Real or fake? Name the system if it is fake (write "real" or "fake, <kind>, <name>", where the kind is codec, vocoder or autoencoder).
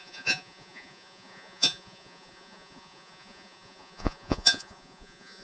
fake, vocoder, Vocos